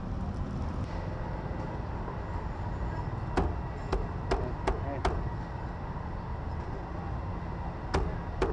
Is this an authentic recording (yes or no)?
yes